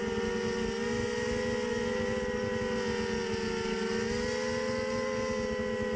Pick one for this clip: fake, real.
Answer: real